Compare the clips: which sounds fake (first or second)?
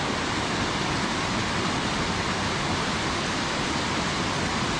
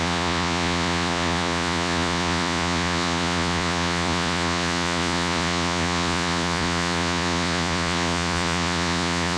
second